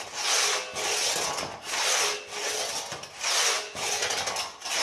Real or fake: real